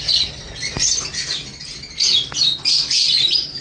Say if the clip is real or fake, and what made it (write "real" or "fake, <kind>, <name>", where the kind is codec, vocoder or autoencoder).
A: real